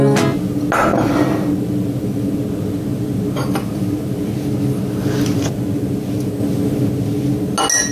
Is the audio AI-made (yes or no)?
no